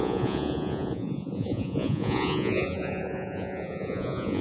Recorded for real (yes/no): no